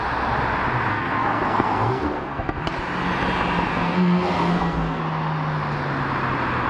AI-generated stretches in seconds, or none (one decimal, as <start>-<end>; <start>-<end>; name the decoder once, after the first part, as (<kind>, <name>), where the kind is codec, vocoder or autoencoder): 0.9-2.6 (codec, SNAC); 3.7-5.0